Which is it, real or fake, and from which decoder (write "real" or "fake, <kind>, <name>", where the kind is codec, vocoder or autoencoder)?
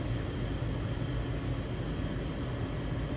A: real